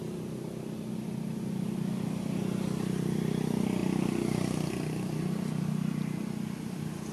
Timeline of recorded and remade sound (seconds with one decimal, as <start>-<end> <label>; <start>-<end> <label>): 0.0-7.1 recorded